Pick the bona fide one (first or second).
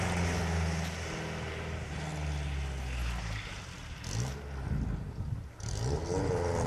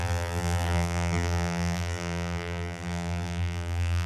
first